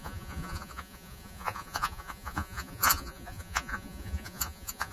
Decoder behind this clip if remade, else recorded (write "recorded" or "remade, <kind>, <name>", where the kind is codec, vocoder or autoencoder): remade, vocoder, Vocos